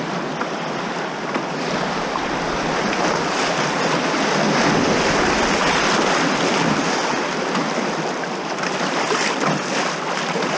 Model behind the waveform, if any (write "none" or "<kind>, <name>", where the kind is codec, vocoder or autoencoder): none